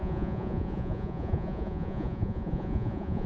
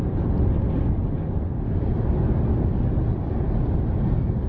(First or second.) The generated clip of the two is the first